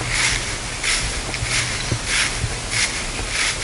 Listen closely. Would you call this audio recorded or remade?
recorded